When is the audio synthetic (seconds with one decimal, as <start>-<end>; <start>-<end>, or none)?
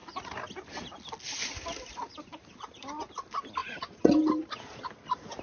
3.6-4.2